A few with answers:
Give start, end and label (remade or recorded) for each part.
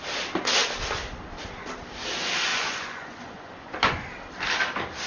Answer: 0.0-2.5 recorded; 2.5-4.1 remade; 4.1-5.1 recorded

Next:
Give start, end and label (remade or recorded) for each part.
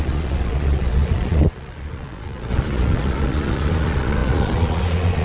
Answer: 0.0-5.2 remade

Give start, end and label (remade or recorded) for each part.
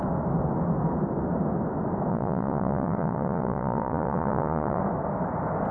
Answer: 0.0-2.1 recorded; 2.1-4.8 remade; 4.8-5.7 recorded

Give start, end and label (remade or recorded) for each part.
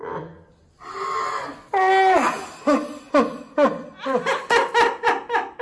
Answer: 0.0-5.6 recorded